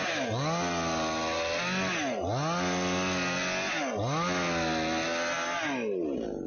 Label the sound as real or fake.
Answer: real